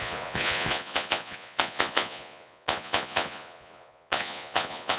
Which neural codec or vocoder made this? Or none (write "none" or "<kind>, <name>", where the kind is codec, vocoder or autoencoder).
vocoder, Vocos